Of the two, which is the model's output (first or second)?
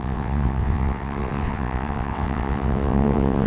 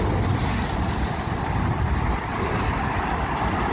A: first